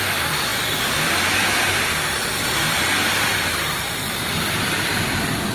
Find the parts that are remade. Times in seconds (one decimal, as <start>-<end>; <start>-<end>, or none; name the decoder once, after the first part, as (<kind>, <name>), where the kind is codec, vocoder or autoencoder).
0.0-5.5 (vocoder, BigVGAN v2)